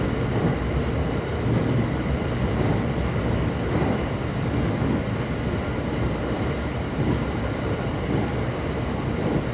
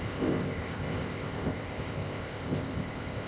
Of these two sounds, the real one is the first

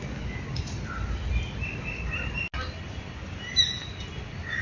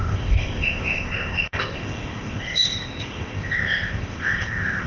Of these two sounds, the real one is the first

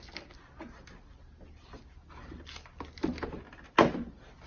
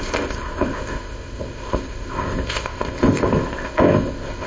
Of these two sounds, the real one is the first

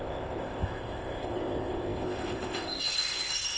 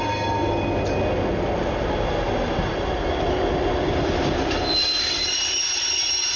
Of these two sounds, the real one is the second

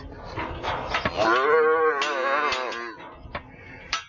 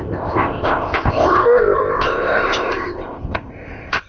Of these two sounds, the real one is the first